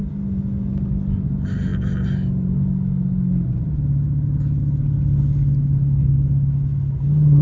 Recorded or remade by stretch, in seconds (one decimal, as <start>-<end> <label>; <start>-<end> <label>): 0.0-7.4 recorded